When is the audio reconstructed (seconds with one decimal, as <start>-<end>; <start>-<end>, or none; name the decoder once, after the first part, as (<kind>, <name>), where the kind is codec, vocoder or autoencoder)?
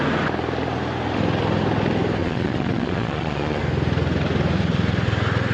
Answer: 2.2-3.6 (vocoder, Vocos)